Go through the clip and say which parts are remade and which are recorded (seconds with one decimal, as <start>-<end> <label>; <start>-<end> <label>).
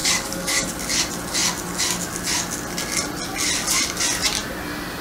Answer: 0.0-0.7 remade; 0.7-5.0 recorded